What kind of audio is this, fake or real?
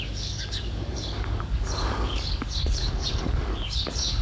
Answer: fake